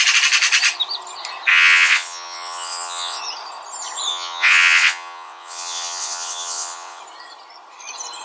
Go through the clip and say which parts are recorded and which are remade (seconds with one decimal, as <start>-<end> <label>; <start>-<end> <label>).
0.0-1.5 recorded; 1.5-3.2 remade; 3.2-4.1 recorded; 4.1-7.0 remade; 7.0-8.2 recorded